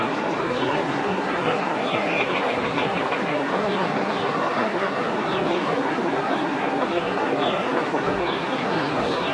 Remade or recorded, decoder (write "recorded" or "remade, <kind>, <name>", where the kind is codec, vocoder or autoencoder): remade, codec, SNAC